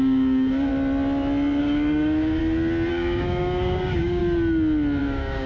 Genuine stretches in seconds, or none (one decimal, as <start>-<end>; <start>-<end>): 0.7-1.6; 2.4-2.9; 4.2-5.0